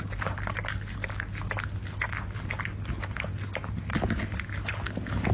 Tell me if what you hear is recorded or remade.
recorded